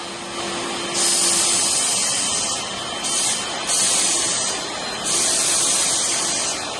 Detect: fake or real real